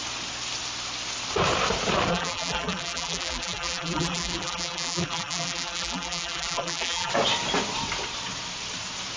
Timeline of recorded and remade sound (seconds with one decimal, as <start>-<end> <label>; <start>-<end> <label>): 0.0-2.1 recorded; 2.1-7.1 remade; 7.1-9.2 recorded